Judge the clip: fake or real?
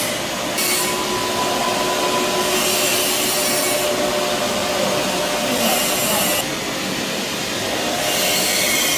real